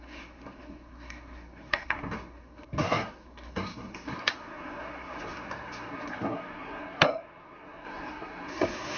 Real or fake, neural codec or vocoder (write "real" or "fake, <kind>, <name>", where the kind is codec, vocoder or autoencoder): fake, codec, SNAC